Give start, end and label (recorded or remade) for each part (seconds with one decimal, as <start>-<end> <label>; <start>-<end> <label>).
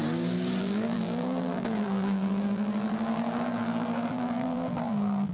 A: 0.0-0.6 recorded; 0.6-5.3 remade